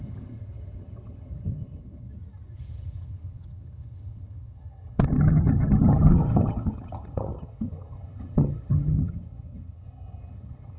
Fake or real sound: fake